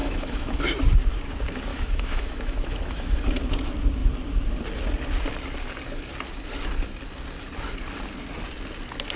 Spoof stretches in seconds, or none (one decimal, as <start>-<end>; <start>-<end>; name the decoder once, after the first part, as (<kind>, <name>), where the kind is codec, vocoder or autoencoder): 0.0-0.6 (autoencoder, DAC-VAE); 1.7-3.2